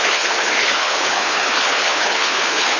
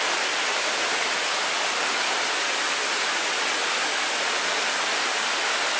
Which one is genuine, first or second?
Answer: second